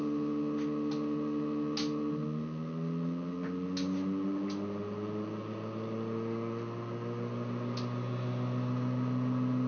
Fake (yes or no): no